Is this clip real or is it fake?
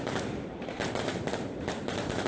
fake